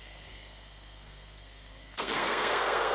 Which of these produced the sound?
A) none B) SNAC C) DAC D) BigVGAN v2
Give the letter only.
B